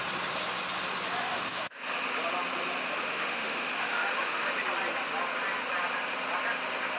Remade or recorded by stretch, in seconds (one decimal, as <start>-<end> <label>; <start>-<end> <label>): 0.0-1.2 recorded; 1.2-1.8 remade; 1.8-2.9 recorded; 2.9-4.5 remade; 4.5-7.0 recorded